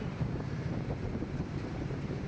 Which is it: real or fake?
fake